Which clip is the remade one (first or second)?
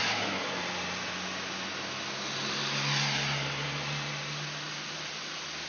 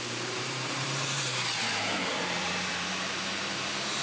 second